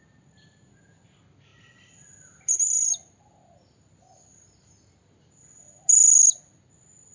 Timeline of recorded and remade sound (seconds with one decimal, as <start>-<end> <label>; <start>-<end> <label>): 0.0-7.1 recorded